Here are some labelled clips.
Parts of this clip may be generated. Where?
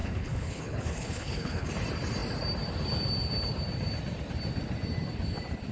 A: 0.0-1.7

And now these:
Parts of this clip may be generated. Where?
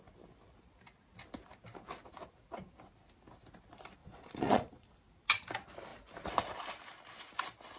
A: 4.0-5.0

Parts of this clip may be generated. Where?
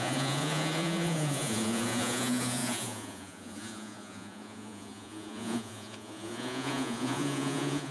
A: 0.0-7.9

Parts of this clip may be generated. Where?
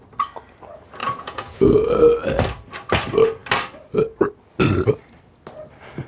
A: 1.0-1.9